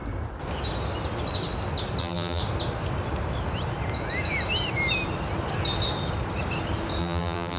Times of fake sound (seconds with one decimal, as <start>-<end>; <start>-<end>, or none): 2.0-2.4; 7.0-7.6